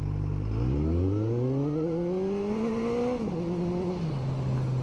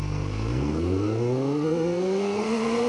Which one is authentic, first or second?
first